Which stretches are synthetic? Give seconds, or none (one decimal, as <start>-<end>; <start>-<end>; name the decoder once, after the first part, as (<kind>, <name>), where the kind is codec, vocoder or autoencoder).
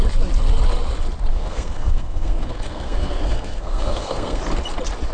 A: 1.3-4.4 (codec, SNAC)